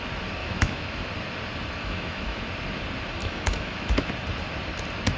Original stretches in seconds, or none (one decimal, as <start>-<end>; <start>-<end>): 0.0-0.4; 1.1-1.8; 2.4-3.2; 4.1-5.2